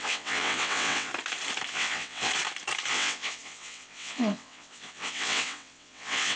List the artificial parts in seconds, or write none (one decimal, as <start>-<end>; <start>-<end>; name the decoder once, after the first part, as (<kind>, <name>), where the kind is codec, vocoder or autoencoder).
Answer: 0.0-1.1 (vocoder, WaveNeXt); 1.7-2.3; 2.9-6.4